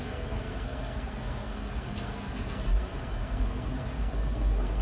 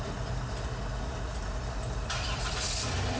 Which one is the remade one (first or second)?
first